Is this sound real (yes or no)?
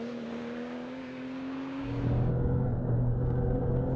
no